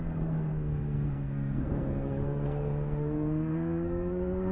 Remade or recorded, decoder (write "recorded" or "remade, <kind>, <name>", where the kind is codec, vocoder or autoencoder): remade, codec, SNAC